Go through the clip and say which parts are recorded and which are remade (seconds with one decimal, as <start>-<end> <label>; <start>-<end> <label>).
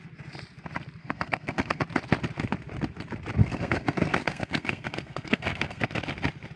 0.0-1.0 recorded; 1.0-1.8 remade; 1.8-3.4 recorded; 3.4-6.0 remade; 6.0-6.6 recorded